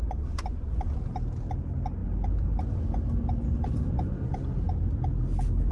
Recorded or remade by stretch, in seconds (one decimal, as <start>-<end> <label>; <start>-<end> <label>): 0.0-5.7 recorded